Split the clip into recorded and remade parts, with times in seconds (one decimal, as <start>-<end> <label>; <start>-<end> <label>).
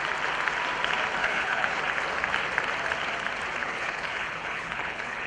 0.0-1.2 recorded; 1.2-1.8 remade; 1.8-3.6 recorded; 3.6-5.3 remade